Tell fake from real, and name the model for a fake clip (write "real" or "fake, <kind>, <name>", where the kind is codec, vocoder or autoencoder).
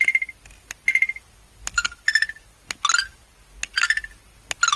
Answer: real